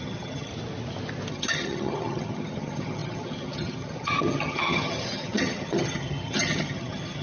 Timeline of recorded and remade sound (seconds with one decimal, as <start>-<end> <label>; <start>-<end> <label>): 0.0-0.5 remade; 0.5-1.3 recorded; 1.3-7.2 remade